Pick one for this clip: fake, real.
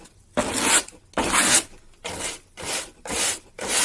real